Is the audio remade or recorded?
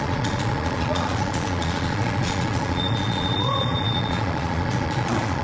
remade